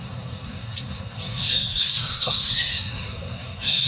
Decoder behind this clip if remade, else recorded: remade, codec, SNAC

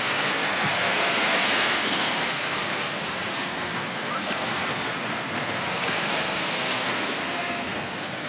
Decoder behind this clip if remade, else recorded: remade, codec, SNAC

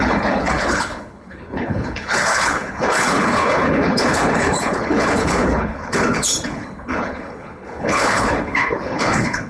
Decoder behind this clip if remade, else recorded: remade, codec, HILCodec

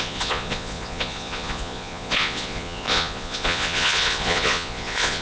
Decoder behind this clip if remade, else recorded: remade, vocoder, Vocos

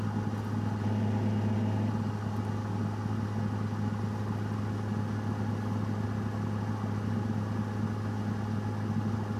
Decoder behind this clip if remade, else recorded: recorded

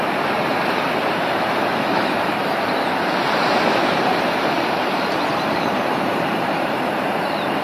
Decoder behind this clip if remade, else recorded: remade, vocoder, BigVGAN v2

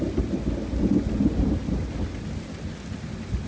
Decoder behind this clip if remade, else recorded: recorded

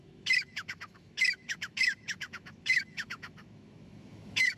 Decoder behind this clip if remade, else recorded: remade, autoencoder, DAC-VAE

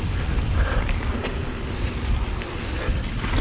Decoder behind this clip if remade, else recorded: recorded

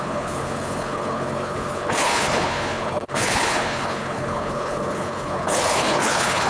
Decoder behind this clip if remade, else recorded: remade, codec, HILCodec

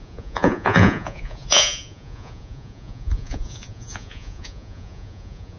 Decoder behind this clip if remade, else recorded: remade, vocoder, Vocos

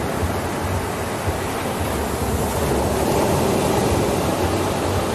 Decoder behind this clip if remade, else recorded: recorded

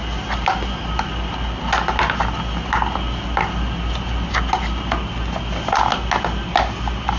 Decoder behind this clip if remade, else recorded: recorded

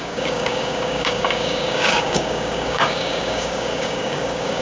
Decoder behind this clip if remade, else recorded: remade, codec, DAC